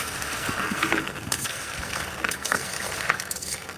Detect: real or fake fake